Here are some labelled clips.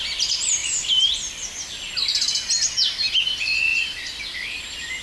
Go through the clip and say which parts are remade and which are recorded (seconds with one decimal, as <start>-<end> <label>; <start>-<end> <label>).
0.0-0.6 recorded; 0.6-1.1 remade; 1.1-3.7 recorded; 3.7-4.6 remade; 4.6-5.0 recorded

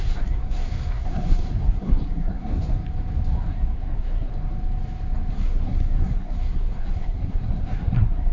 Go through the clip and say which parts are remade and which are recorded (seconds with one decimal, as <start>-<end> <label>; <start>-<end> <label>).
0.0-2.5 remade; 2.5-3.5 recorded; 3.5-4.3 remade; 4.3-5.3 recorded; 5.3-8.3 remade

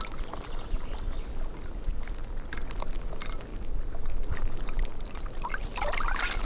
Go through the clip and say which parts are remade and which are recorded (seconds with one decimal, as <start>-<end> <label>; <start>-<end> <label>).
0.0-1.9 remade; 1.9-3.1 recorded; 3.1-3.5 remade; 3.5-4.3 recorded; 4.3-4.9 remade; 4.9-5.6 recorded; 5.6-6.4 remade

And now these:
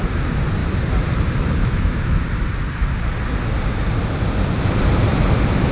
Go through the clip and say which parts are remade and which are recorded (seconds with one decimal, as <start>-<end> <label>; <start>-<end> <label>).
0.0-1.6 recorded; 1.6-2.2 remade; 2.2-5.7 recorded